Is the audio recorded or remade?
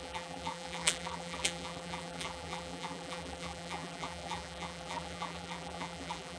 remade